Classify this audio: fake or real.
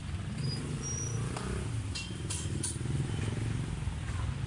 real